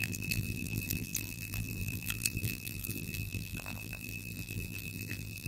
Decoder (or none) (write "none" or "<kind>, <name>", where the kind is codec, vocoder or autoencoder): vocoder, BigVGAN v2